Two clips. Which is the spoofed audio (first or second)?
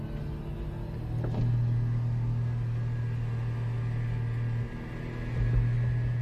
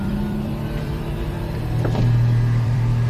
second